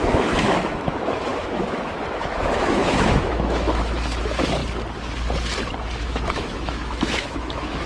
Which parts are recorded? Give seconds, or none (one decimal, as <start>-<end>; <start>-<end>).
4.6-6.0